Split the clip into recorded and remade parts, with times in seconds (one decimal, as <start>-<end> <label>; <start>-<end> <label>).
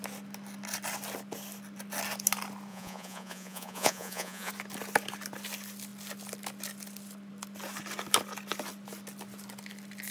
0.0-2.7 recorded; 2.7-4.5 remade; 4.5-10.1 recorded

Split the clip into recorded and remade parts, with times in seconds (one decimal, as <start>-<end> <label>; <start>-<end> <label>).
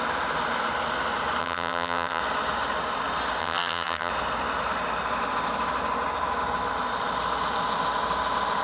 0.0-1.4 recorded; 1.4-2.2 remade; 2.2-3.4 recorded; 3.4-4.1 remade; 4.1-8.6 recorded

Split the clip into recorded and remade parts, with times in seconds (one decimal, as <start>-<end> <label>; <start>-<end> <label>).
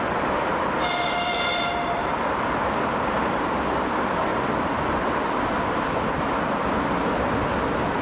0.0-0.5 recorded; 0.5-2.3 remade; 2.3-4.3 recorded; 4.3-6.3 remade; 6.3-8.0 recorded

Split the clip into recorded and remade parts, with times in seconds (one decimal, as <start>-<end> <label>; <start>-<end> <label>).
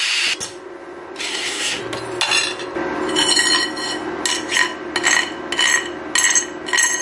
0.0-1.2 recorded; 1.2-1.8 remade; 1.8-7.0 recorded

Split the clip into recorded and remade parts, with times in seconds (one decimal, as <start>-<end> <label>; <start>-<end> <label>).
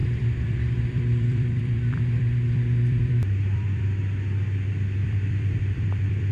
0.0-3.8 remade; 3.8-5.0 recorded; 5.0-6.3 remade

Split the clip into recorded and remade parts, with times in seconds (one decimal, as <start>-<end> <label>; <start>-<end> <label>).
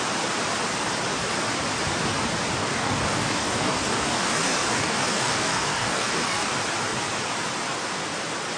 0.0-2.6 recorded; 2.6-6.5 remade; 6.5-8.6 recorded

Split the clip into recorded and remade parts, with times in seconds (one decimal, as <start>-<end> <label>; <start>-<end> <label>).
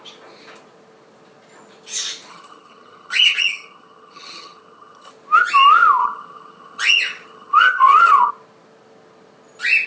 0.0-2.3 recorded; 2.3-5.1 remade; 5.1-6.0 recorded; 6.0-8.3 remade; 8.3-9.9 recorded